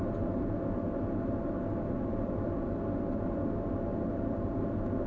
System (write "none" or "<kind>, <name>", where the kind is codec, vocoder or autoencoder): none